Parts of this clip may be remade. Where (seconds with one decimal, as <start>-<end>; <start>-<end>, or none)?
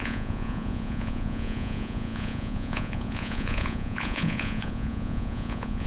0.0-5.9